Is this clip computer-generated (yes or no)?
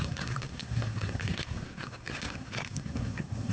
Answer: yes